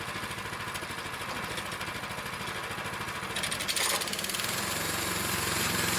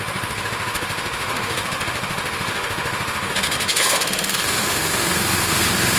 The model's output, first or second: second